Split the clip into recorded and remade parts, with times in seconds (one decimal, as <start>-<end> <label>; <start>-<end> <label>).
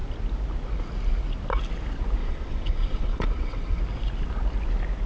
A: 0.0-2.2 recorded; 2.2-3.8 remade; 3.8-5.1 recorded